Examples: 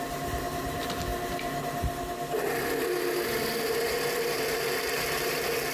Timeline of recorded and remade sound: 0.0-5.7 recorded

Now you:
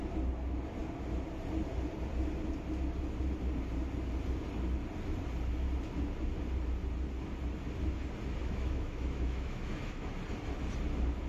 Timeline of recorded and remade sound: 0.0-8.4 recorded; 8.4-10.1 remade; 10.1-11.3 recorded

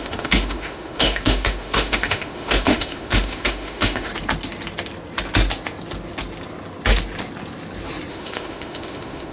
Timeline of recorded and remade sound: 0.0-4.1 remade; 4.1-8.1 recorded; 8.1-9.3 remade

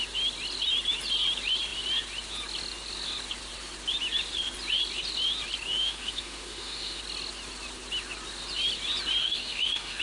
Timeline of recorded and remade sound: 0.0-5.8 recorded; 5.8-7.0 remade; 7.0-9.2 recorded; 9.2-10.0 remade

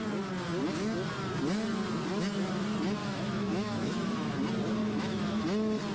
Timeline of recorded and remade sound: 0.0-3.0 recorded; 3.0-4.3 remade; 4.3-4.8 recorded; 4.8-5.4 remade; 5.4-5.9 recorded

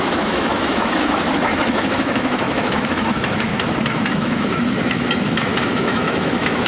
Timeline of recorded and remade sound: 0.0-3.5 remade; 3.5-4.1 recorded; 4.1-6.7 remade

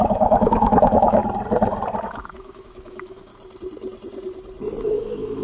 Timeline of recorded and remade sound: 0.0-1.2 remade; 1.2-2.0 recorded; 2.0-3.3 remade; 3.3-4.8 recorded; 4.8-5.4 remade

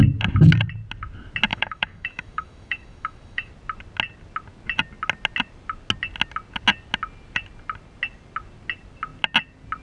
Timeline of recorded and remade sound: 0.0-1.5 recorded; 1.5-3.5 remade; 3.5-9.8 recorded